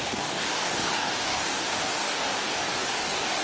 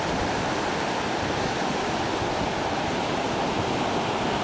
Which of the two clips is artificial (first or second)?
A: first